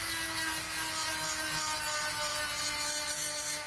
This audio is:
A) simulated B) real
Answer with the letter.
B